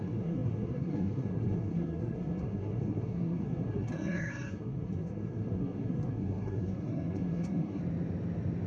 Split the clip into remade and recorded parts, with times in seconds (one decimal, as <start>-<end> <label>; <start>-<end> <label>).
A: 0.0-7.8 remade; 7.8-8.7 recorded